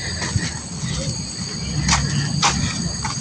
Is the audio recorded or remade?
recorded